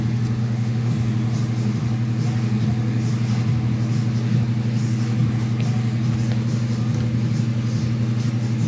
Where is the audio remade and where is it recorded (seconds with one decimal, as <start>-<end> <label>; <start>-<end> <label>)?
0.0-0.4 recorded; 0.4-0.9 remade; 0.9-8.7 recorded